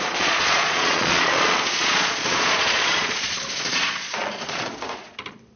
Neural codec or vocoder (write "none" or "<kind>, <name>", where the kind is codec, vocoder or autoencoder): vocoder, Vocos